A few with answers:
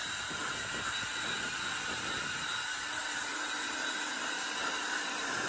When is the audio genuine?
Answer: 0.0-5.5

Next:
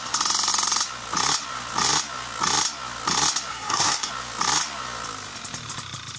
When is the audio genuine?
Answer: 0.0-3.5; 4.1-6.2

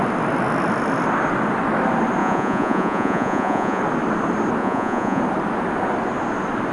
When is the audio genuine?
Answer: 0.0-2.2; 3.8-4.6; 5.2-6.7

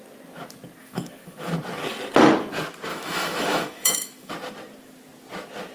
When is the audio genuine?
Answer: 0.0-0.8; 1.5-2.9; 4.3-5.7

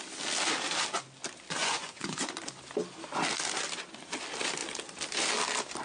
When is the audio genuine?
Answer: 0.0-1.6; 2.3-5.8

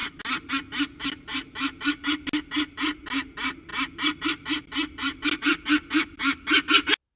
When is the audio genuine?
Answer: 0.0-7.2